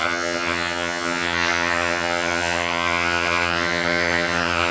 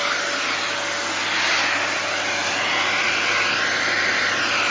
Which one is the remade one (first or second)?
first